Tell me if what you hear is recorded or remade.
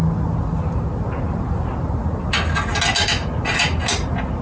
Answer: recorded